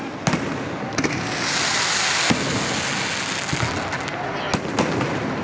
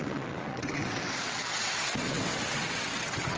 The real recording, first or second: first